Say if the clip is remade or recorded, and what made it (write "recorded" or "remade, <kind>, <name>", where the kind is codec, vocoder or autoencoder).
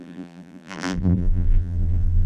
remade, vocoder, BigVGAN v2